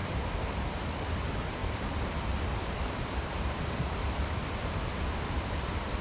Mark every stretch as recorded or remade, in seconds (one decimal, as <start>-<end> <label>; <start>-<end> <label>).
0.0-6.0 remade